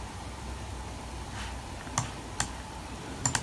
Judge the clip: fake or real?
real